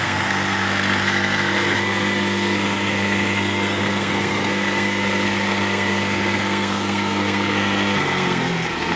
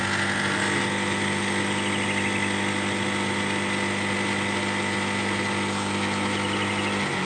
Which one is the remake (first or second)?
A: first